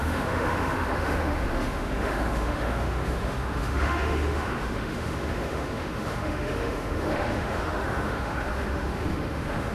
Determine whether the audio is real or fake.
fake